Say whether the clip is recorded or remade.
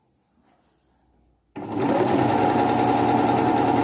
recorded